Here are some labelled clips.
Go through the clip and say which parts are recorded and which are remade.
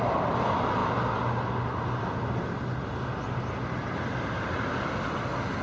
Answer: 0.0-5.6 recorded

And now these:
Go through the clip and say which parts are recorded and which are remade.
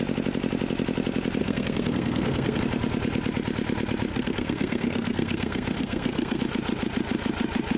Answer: 0.0-1.4 recorded; 1.4-2.6 remade; 2.6-4.1 recorded; 4.1-6.4 remade; 6.4-7.8 recorded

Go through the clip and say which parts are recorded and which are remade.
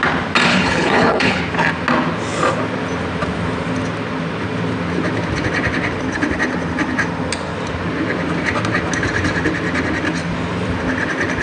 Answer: 0.0-0.5 recorded; 0.5-1.4 remade; 1.4-11.4 recorded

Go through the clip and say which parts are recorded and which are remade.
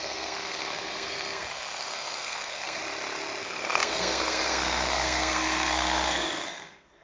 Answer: 0.0-2.8 remade; 2.8-3.4 recorded; 3.4-7.0 remade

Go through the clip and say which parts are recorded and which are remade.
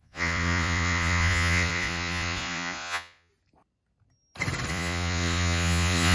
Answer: 0.0-3.3 remade; 3.3-4.7 recorded; 4.7-6.1 remade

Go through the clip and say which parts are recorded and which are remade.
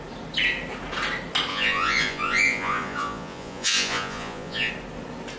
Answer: 0.0-1.5 recorded; 1.5-4.7 remade; 4.7-5.4 recorded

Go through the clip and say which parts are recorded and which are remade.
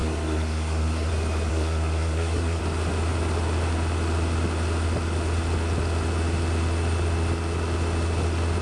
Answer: 0.0-1.1 remade; 1.1-1.5 recorded; 1.5-2.6 remade; 2.6-8.6 recorded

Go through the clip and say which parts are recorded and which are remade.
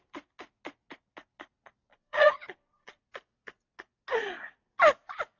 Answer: 0.0-1.9 recorded; 1.9-3.0 remade; 3.0-5.4 recorded